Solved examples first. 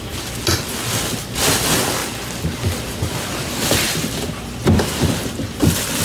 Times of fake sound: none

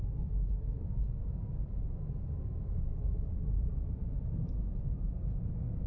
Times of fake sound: 1.7-5.2